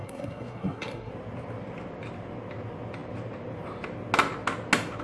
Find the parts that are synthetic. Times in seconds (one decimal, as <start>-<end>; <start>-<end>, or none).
0.0-1.1